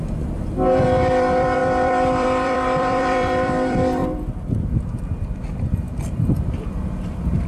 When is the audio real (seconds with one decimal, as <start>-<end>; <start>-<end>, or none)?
none